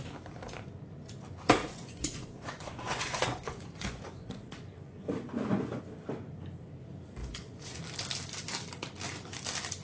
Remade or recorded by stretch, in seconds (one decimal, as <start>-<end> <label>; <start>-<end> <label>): 0.0-1.6 recorded; 1.6-5.8 remade; 5.8-7.2 recorded; 7.2-7.8 remade; 7.8-9.8 recorded